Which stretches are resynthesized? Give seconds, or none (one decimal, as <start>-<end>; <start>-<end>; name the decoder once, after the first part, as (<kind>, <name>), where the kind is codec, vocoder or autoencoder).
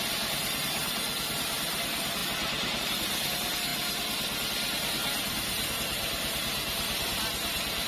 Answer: none